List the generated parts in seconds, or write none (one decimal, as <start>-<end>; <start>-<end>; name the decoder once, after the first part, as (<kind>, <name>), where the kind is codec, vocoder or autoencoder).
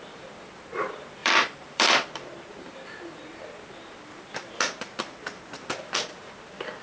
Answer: 1.2-2.1 (vocoder, BigVGAN v2)